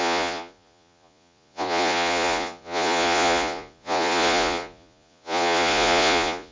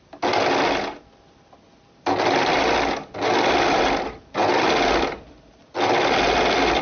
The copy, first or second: first